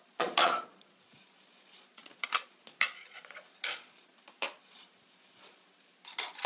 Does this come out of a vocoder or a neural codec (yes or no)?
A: yes